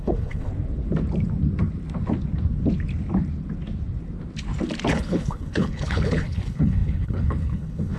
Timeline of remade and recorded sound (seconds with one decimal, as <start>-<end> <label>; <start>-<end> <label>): 0.0-0.5 remade; 0.5-4.9 recorded; 4.9-8.0 remade